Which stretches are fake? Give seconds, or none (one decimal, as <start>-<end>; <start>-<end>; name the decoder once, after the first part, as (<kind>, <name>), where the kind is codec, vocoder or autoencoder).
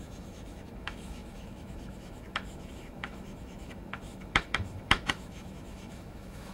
0.0-6.5 (autoencoder, DAC-VAE)